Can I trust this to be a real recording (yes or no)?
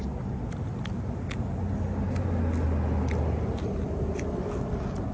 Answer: yes